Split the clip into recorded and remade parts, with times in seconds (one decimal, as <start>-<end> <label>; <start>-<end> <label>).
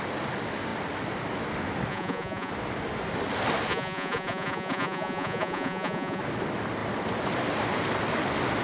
0.0-1.9 recorded; 1.9-2.5 remade; 2.5-3.7 recorded; 3.7-6.2 remade; 6.2-8.6 recorded